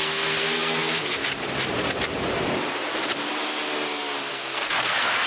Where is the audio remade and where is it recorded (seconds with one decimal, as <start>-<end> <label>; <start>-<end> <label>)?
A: 0.0-1.1 remade; 1.1-4.3 recorded; 4.3-5.3 remade